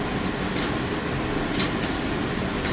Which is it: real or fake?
real